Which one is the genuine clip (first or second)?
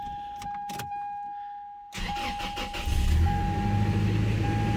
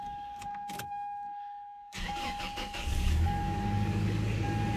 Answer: first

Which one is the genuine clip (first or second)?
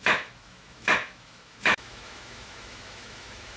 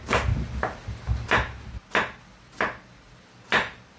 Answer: second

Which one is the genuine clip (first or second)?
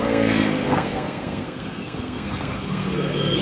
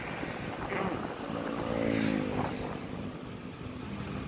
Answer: second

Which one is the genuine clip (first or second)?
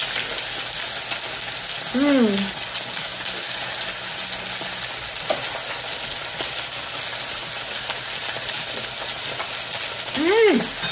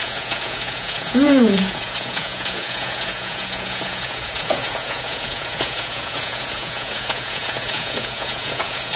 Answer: first